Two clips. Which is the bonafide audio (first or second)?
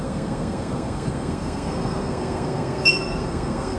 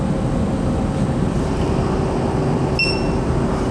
second